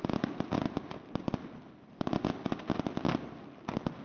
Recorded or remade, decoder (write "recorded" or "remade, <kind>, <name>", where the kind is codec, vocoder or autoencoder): recorded